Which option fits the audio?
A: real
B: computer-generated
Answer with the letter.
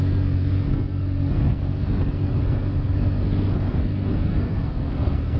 B